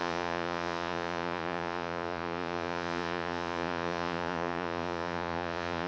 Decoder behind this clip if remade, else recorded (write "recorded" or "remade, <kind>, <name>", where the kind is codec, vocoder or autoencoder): remade, vocoder, Vocos